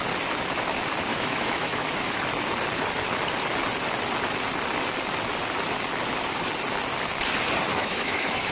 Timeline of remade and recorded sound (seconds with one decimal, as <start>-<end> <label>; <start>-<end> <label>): 0.0-1.1 recorded; 1.1-2.2 remade; 2.2-7.7 recorded; 7.7-8.5 remade